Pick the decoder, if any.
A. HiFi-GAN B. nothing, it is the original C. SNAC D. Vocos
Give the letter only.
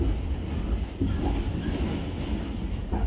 B